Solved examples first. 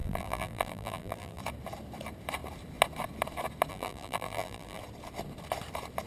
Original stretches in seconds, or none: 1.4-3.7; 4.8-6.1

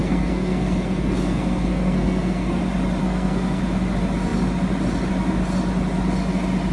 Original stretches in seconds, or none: 2.6-3.0; 3.6-6.7